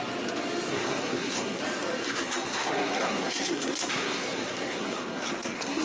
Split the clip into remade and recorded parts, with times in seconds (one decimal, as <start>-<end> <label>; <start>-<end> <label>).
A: 0.0-0.7 recorded; 0.7-1.6 remade; 1.6-2.0 recorded; 2.0-5.8 remade